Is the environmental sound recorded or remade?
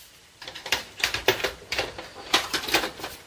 remade